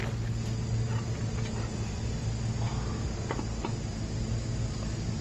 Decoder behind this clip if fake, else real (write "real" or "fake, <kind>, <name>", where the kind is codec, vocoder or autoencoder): real